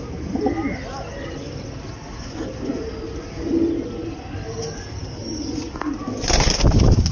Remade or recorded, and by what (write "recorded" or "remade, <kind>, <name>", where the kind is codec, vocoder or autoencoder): recorded